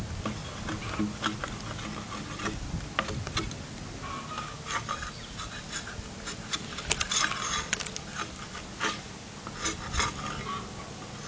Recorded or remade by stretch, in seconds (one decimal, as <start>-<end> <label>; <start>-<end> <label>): 0.0-11.3 recorded